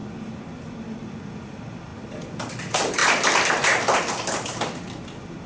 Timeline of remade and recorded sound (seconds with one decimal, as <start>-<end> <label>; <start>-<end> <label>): 0.0-1.1 recorded; 1.1-5.5 remade